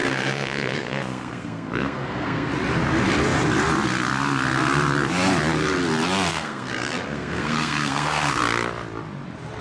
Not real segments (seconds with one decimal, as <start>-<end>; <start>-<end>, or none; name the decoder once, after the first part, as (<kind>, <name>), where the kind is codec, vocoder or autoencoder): 0.0-2.5 (codec, SNAC); 6.3-8.4